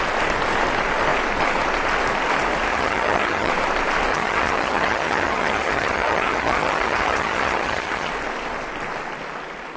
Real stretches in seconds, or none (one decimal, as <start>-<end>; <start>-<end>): 0.0-2.7; 3.5-4.1; 8.1-9.8